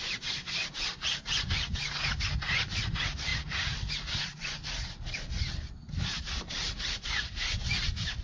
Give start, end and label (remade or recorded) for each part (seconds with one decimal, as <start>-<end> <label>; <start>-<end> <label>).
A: 0.0-8.2 recorded